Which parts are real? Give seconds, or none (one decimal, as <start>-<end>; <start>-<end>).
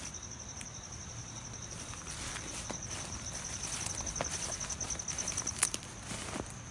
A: 0.0-6.7